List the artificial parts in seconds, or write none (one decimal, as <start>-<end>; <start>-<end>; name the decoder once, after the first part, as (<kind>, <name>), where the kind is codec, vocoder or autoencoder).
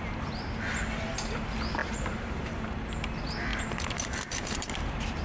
1.8-2.6 (vocoder, BigVGAN v2); 3.5-4.7